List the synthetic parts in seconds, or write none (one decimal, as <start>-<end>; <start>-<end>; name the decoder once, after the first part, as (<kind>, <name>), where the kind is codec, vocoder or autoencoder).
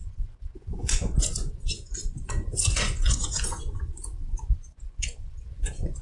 0.0-6.0 (vocoder, Vocos)